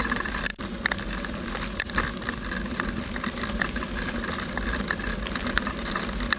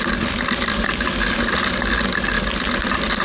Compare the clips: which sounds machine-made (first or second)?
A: first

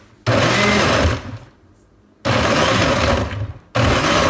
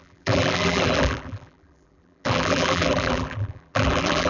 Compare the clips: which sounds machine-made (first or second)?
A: second